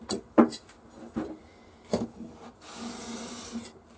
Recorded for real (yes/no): yes